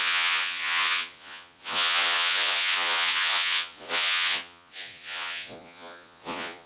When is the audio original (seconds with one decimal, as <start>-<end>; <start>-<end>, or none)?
none

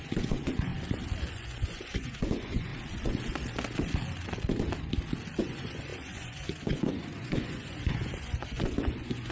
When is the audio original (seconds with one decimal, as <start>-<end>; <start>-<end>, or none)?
0.7-1.3; 2.7-5.4